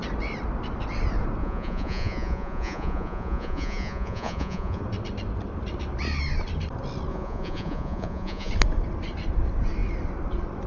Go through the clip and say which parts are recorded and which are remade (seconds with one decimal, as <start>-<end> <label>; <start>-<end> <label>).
0.0-1.4 recorded; 1.4-4.8 remade; 4.8-7.1 recorded; 7.1-8.5 remade; 8.5-10.7 recorded